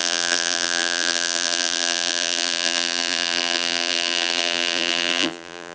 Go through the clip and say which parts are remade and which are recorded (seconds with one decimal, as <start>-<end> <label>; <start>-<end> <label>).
0.0-5.7 remade